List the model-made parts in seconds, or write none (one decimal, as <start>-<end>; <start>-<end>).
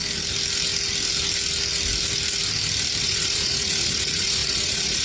3.0-5.0